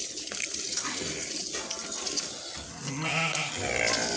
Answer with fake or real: real